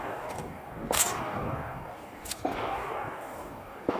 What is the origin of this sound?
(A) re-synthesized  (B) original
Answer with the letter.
A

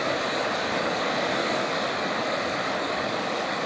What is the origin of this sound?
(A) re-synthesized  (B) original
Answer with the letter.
A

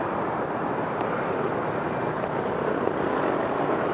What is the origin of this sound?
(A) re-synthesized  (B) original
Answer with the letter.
B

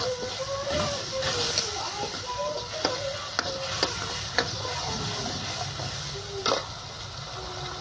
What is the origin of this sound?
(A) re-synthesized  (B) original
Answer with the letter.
B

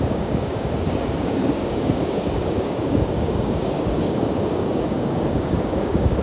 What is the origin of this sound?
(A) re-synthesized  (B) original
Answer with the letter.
A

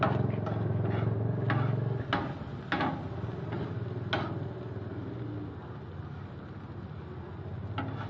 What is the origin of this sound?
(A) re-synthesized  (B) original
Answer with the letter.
B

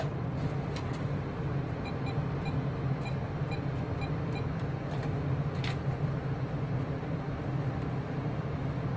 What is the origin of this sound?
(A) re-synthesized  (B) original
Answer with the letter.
B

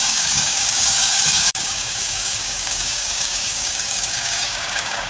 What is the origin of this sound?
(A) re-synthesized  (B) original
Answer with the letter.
A